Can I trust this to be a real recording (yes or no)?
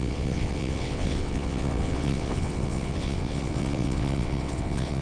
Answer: no